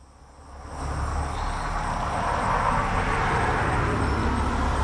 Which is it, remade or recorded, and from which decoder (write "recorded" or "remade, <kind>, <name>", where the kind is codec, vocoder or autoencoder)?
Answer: recorded